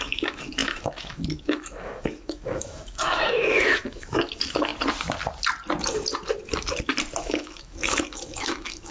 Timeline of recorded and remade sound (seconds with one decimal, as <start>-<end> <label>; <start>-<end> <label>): 0.0-4.7 remade; 4.7-7.2 recorded; 7.2-8.9 remade